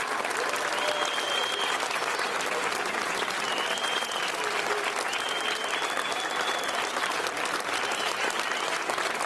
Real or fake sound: real